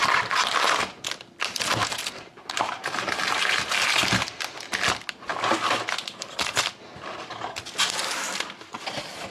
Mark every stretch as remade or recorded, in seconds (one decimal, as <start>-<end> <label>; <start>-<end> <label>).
0.0-1.8 recorded; 1.8-3.2 remade; 3.2-9.3 recorded